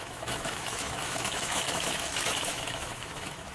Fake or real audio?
fake